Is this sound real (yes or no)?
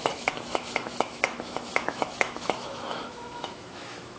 no